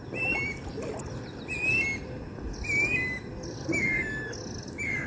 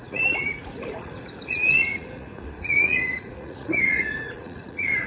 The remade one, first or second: second